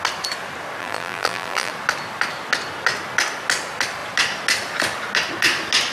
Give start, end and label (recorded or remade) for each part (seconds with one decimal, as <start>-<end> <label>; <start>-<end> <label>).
0.0-0.8 recorded; 0.8-1.7 remade; 1.7-5.9 recorded